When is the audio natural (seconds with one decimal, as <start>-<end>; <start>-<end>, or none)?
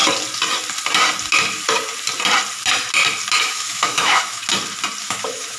0.0-3.4; 4.4-5.0